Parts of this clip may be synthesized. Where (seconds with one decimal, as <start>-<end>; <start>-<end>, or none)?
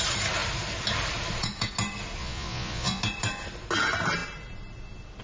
2.2-3.0